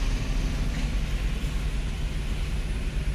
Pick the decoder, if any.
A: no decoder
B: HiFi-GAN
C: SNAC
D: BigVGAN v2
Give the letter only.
A